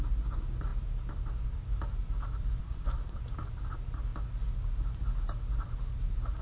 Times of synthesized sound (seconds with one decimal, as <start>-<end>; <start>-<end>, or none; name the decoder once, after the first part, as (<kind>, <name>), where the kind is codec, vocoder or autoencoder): 2.6-3.2 (codec, SNAC)